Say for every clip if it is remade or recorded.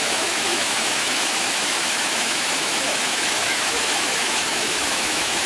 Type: remade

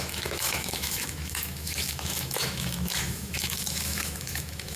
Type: remade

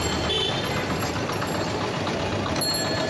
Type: recorded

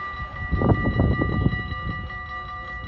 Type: recorded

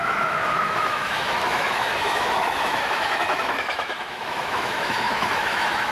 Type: remade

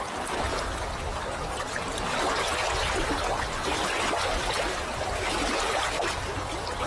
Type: recorded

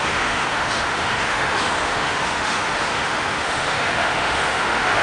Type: remade